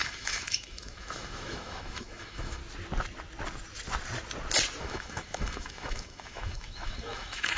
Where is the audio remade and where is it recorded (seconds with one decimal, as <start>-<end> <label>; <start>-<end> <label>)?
0.0-2.6 remade; 2.6-4.8 recorded; 4.8-7.6 remade